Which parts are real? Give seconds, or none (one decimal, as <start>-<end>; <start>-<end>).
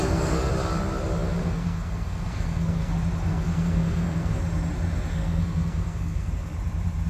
0.5-1.4; 2.9-3.3; 4.4-5.2; 6.3-7.1